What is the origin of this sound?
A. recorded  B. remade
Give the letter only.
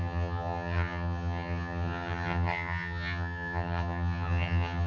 B